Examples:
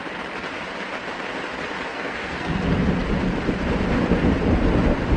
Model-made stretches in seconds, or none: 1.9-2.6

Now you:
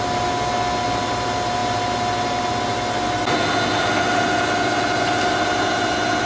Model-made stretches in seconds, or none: none

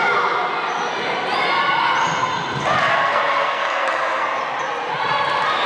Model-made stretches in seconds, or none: 2.9-4.4